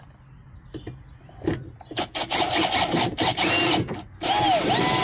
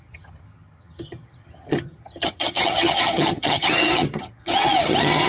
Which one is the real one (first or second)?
first